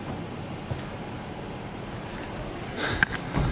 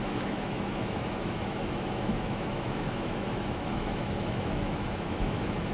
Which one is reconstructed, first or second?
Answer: second